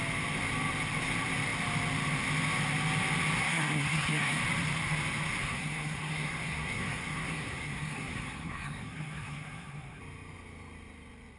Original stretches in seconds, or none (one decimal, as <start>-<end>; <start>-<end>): 0.0-3.4; 4.4-5.4; 10.0-11.4